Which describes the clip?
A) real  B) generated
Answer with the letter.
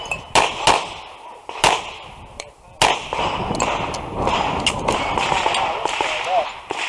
A